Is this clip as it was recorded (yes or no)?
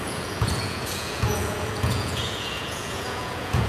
no